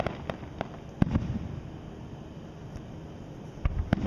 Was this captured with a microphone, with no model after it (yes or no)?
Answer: no